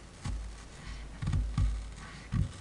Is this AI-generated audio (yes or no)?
no